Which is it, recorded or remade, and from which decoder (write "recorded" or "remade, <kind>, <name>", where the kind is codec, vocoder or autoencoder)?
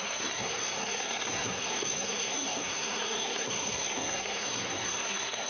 remade, codec, SNAC